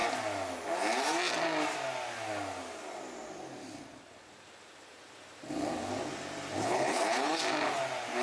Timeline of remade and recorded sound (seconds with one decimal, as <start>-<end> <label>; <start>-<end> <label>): 0.0-6.6 recorded; 6.6-7.4 remade; 7.4-8.2 recorded